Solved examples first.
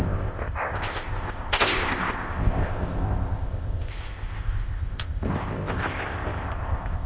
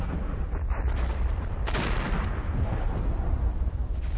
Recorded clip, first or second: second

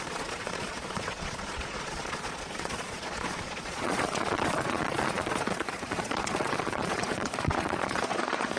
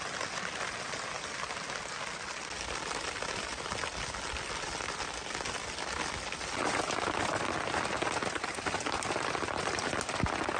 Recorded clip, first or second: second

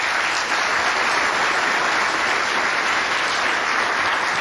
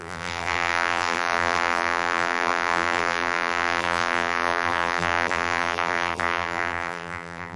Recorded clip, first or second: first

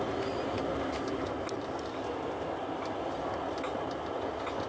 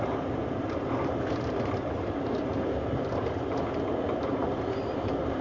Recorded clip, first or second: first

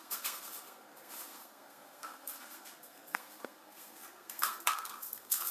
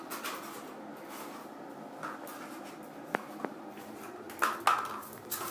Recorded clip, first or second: second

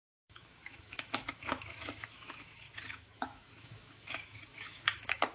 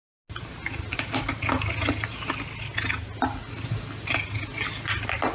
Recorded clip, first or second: second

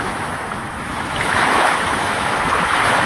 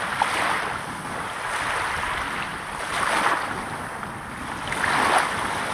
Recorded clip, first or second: second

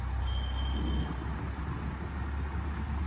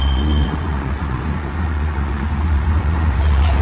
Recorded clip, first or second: first